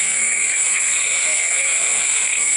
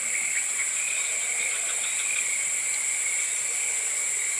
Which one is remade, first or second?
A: first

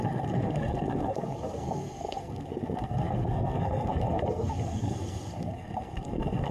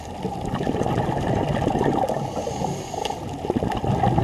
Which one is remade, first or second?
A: first